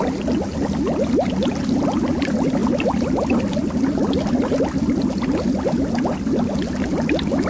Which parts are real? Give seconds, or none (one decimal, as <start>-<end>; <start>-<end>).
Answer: 0.0-7.5